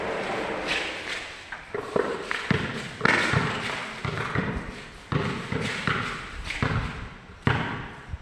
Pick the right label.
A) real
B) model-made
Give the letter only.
A